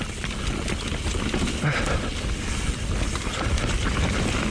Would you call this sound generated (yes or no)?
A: no